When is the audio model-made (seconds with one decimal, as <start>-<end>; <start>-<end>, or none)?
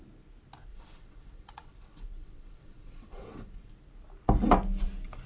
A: 0.7-3.7